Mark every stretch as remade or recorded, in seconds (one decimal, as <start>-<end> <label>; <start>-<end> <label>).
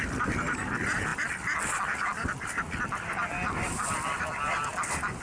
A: 0.0-5.2 recorded